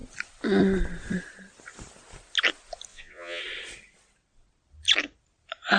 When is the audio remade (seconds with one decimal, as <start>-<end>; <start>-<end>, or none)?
2.9-3.4